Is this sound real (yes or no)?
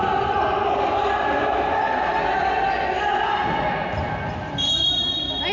yes